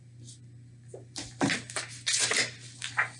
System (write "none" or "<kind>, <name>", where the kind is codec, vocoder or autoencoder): none